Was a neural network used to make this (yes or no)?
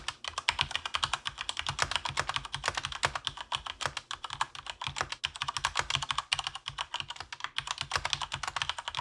no